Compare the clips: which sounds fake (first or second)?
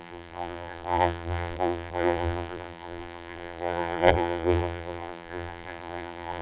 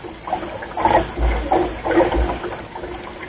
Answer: first